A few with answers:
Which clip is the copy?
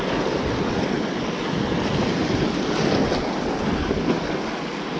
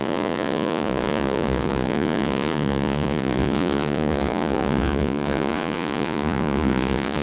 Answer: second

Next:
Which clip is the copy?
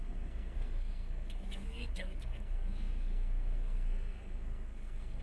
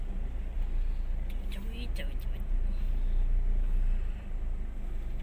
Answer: first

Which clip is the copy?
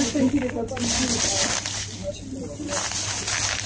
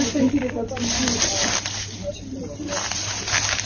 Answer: second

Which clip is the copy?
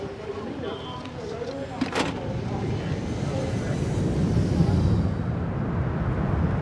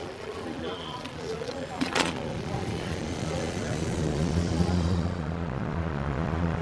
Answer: second